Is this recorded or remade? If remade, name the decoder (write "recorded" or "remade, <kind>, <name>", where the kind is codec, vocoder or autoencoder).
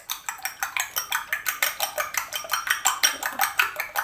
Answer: recorded